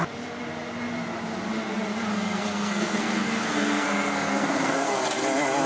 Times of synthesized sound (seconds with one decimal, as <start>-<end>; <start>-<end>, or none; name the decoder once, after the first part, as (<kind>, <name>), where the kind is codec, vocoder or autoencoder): 2.1-5.0 (codec, SNAC)